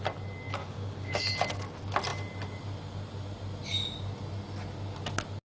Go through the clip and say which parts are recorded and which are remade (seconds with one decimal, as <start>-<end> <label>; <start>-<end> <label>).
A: 0.0-0.6 recorded; 0.6-1.2 remade; 1.2-5.6 recorded